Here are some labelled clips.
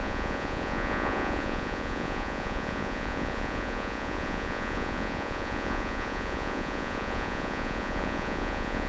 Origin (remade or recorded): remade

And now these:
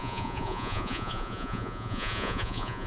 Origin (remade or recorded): remade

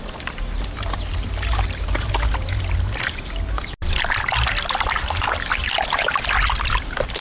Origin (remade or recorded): recorded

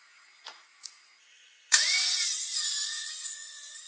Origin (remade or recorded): remade